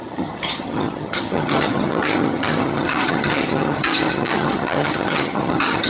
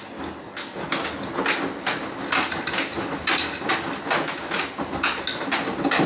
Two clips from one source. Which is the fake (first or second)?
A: first